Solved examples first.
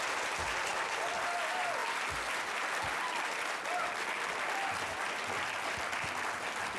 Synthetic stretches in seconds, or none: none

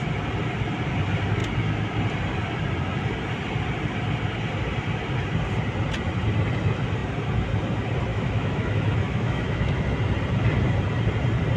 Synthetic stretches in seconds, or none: 8.1-9.8 (autoencoder, DAC-VAE)

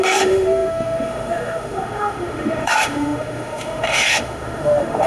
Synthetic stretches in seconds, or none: 0.0-5.1 (autoencoder, DAC-VAE)